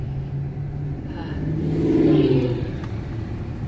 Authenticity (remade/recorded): recorded